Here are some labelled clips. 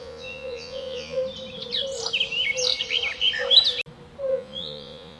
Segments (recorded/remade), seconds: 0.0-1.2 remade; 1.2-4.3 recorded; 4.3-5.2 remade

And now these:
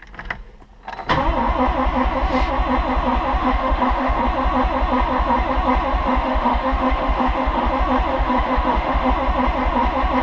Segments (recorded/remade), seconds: 0.0-3.4 recorded; 3.4-4.2 remade; 4.2-6.0 recorded; 6.0-7.7 remade; 7.7-8.1 recorded; 8.1-9.1 remade; 9.1-10.2 recorded

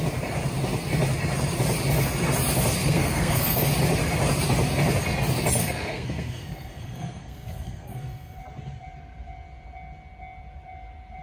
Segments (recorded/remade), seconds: 0.0-2.8 recorded; 2.8-3.6 remade; 3.6-5.6 recorded; 5.6-8.4 remade; 8.4-11.2 recorded

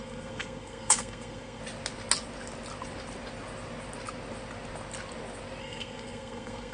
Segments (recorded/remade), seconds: 0.0-1.6 remade; 1.6-5.6 recorded; 5.6-6.7 remade

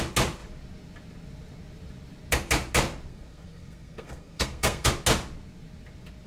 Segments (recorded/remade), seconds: 0.0-3.1 recorded; 3.1-4.9 remade; 4.9-6.3 recorded